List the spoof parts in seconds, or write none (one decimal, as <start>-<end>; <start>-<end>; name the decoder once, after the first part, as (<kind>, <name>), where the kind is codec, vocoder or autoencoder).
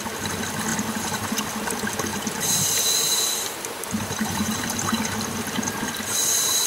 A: 0.7-1.4 (vocoder, BigVGAN v2); 2.1-5.0